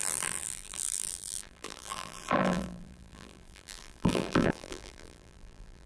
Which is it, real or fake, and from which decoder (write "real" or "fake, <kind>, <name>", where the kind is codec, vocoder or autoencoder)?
fake, vocoder, BigVGAN v2